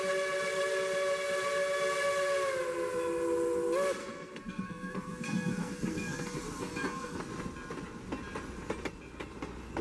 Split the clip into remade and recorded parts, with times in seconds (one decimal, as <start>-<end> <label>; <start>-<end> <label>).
0.0-4.0 recorded; 4.0-7.2 remade; 7.2-9.8 recorded